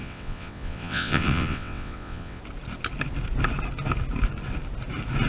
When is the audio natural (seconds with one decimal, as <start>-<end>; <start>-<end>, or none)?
2.4-5.3